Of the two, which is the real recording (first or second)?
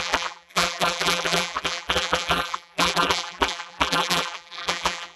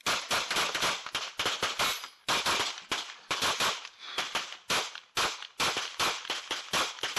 second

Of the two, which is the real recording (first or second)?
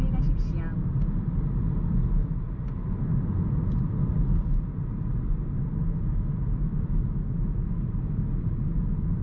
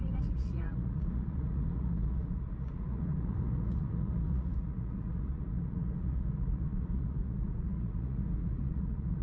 first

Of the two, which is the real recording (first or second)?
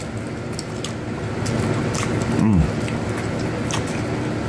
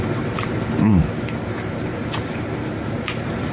first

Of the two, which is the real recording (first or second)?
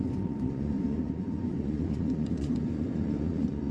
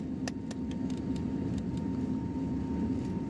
second